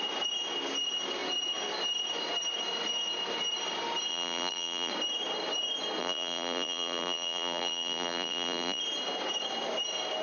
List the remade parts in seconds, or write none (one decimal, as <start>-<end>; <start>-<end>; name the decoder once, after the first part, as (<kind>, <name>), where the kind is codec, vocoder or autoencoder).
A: 4.1-4.9 (vocoder, BigVGAN v2); 6.0-8.8